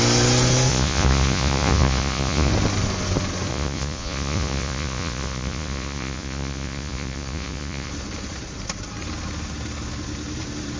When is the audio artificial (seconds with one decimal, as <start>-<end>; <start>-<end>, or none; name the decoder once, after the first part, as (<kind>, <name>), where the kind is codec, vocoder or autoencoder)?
0.7-2.5 (vocoder, Vocos); 3.5-7.9